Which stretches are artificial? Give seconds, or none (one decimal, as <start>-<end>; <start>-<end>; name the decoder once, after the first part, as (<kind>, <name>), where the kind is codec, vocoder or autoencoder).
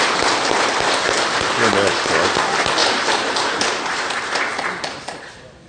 2.8-4.4 (vocoder, BigVGAN v2)